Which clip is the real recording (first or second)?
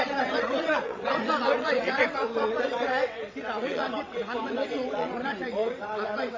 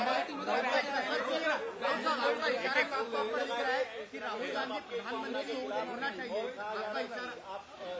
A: second